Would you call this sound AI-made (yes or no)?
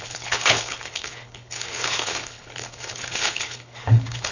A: yes